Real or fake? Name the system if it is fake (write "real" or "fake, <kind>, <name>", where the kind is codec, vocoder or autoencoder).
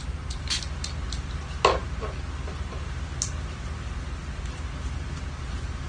real